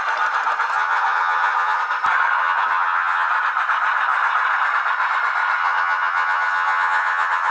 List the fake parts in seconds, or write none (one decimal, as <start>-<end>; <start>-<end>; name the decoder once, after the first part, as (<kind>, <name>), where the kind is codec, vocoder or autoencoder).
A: 0.7-1.8 (vocoder, HiFi-GAN); 2.4-3.3; 5.6-7.5